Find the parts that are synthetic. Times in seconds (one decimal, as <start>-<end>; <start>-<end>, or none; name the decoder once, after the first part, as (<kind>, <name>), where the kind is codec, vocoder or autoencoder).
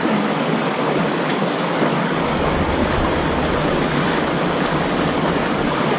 0.0-2.8 (codec, DAC); 4.8-6.0